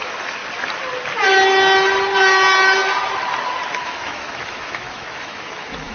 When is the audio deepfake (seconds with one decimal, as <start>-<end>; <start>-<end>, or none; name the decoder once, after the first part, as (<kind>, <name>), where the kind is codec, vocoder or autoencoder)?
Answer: 0.0-0.4 (autoencoder, DAC-VAE); 3.7-5.9